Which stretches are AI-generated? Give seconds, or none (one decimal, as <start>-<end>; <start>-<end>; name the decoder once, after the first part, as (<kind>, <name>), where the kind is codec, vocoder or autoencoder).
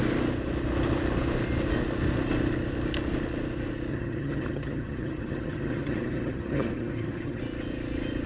3.9-7.4 (vocoder, HiFi-GAN)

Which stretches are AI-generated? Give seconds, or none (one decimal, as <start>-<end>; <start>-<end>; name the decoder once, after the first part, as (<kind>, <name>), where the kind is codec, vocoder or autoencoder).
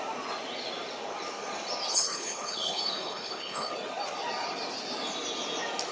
1.9-3.7 (codec, HILCodec)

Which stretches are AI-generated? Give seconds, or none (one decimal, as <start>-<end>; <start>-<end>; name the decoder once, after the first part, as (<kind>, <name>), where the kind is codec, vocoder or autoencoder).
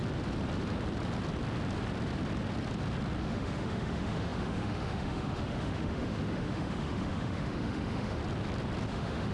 3.2-8.2 (autoencoder, DAC-VAE); 8.9-9.3